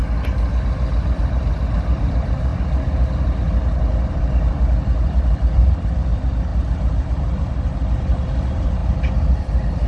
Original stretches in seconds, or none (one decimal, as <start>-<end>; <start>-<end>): 0.0-1.2; 2.5-4.1; 8.8-9.4